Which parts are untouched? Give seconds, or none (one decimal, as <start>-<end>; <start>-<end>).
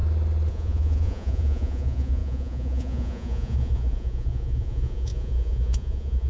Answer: 0.0-0.5